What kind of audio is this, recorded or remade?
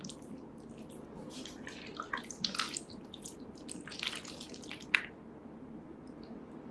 recorded